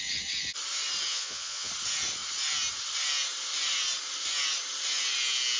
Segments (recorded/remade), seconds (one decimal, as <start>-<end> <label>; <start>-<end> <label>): 0.0-1.1 recorded; 1.1-1.7 remade; 1.7-5.6 recorded